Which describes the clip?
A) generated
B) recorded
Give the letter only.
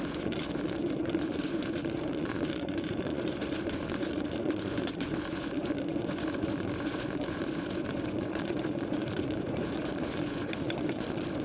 A